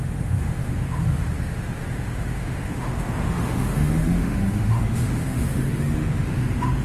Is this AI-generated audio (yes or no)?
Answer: yes